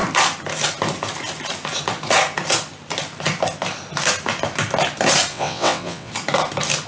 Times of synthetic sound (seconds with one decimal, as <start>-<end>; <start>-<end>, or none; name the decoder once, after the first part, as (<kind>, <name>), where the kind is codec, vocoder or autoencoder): 5.3-6.1 (vocoder, WaveNeXt)